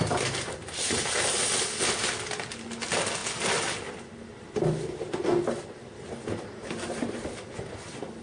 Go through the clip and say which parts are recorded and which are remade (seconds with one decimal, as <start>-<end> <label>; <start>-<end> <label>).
0.0-8.2 recorded